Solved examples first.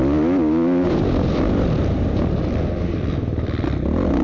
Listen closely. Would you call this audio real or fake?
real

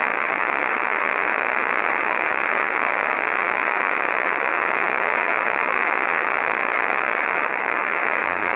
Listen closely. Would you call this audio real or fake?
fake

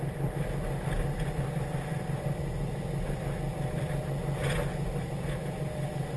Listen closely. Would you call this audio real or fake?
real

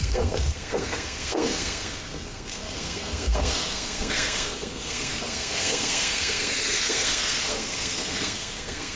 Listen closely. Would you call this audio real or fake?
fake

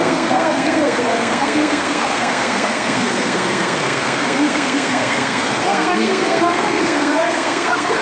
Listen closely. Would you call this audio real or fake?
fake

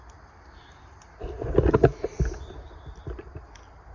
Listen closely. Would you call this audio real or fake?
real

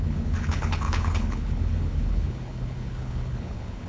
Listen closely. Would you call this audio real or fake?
fake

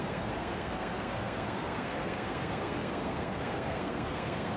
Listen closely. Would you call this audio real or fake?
fake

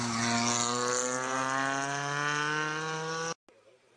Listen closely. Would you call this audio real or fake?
real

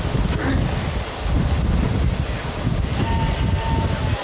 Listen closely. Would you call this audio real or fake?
real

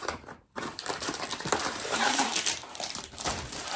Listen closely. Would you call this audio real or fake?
fake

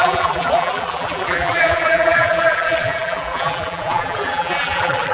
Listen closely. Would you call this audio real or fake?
fake